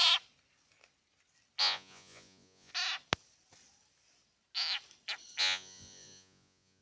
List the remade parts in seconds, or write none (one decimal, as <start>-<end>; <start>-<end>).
1.6-2.7; 5.4-6.8